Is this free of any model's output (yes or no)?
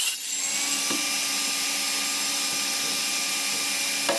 yes